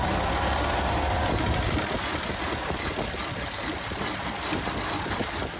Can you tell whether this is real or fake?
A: real